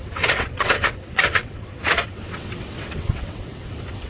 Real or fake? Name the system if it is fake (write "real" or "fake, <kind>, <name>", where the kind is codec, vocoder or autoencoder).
fake, vocoder, WaveNeXt